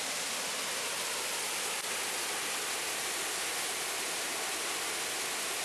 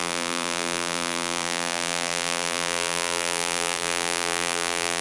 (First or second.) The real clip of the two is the first